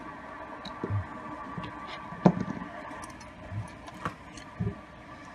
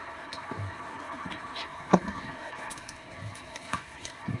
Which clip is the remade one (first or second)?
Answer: second